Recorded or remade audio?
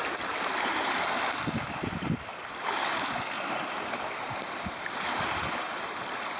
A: remade